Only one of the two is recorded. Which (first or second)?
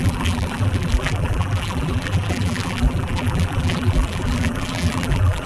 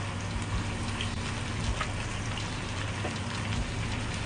second